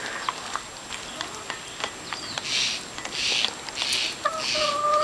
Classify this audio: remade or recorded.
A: recorded